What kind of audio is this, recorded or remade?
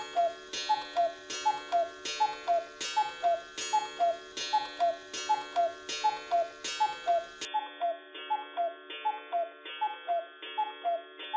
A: recorded